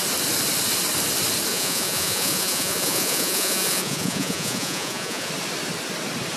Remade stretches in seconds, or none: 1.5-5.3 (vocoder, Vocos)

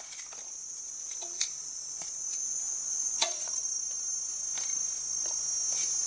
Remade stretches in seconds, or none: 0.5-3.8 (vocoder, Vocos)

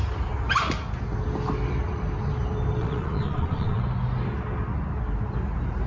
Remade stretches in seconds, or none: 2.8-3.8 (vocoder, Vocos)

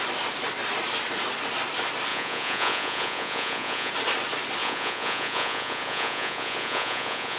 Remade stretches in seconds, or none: 2.1-3.9 (vocoder, Vocos); 4.6-7.4

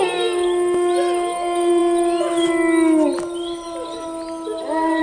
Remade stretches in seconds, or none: none

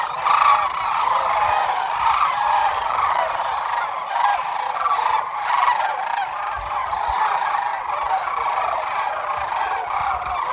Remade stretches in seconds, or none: 2.6-3.2 (vocoder, Vocos)

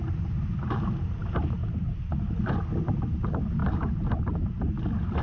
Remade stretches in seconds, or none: none